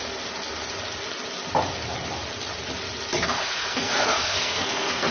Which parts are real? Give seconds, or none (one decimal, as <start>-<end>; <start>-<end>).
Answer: 0.0-3.2